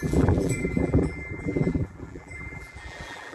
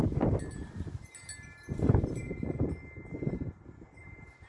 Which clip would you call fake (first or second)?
first